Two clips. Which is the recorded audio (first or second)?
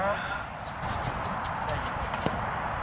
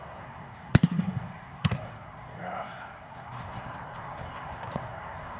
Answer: first